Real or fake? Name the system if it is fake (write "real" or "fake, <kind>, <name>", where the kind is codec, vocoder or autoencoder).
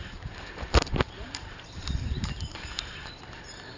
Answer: fake, vocoder, BigVGAN v2